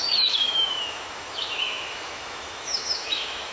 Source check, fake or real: fake